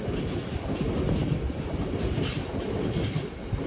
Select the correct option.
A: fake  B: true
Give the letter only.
B